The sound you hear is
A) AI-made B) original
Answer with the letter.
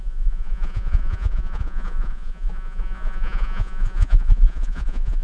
A